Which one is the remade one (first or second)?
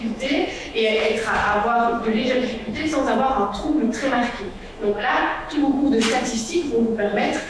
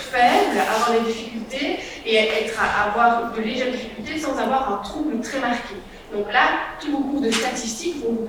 first